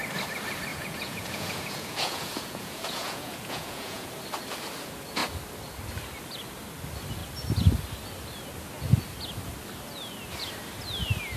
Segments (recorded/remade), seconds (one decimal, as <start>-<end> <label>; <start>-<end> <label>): 0.0-0.7 recorded; 0.7-4.1 remade; 4.1-11.4 recorded